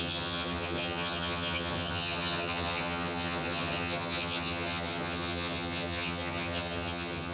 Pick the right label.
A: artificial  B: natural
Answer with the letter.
A